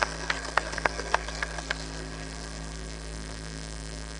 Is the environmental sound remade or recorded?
remade